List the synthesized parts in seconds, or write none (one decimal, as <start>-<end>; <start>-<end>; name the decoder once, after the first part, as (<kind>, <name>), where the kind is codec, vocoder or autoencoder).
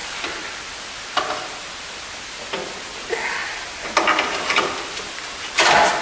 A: none